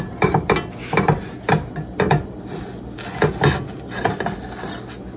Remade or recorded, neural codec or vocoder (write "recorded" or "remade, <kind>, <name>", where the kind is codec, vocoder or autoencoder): recorded